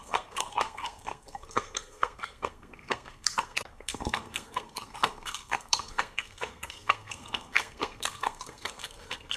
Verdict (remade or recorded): remade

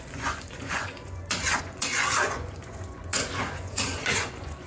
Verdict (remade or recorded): remade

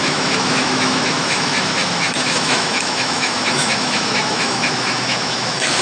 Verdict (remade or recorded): remade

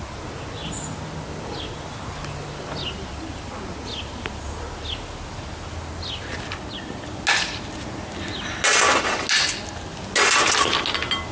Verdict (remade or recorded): recorded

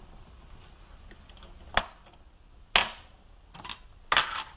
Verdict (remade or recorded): recorded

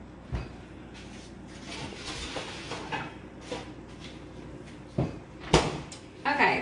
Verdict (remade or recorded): recorded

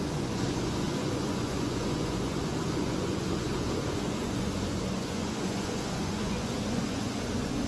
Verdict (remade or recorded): remade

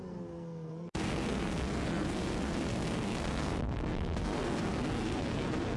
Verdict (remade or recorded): remade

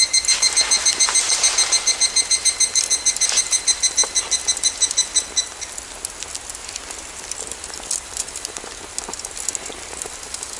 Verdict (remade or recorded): recorded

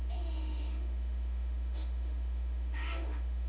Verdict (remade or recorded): remade